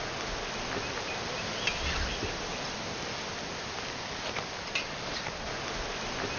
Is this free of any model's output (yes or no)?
yes